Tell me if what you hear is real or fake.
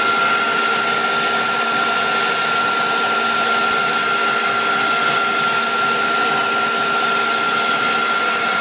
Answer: real